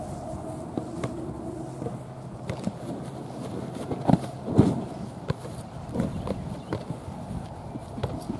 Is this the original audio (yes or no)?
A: yes